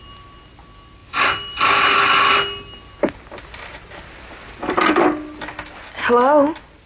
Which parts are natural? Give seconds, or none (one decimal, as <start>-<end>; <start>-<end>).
0.0-6.9